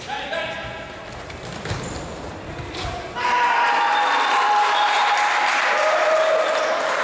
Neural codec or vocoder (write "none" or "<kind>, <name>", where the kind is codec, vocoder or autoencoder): none